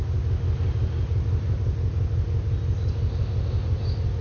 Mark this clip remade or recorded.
recorded